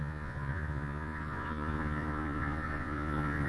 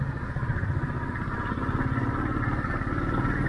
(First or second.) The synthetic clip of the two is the first